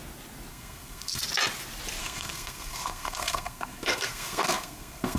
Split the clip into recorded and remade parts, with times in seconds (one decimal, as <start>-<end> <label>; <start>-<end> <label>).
0.0-0.5 recorded; 0.5-1.2 remade; 1.2-2.0 recorded; 2.0-5.2 remade